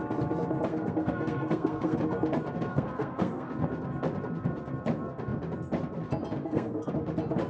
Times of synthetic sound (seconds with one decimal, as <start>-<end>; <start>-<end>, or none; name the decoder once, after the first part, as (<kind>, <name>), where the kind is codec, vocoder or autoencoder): 0.7-2.0 (codec, SNAC); 2.7-3.5; 6.4-6.9